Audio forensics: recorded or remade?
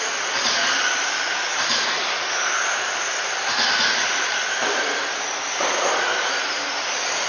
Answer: recorded